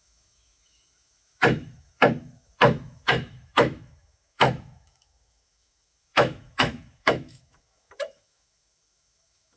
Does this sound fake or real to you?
fake